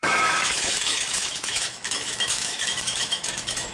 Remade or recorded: remade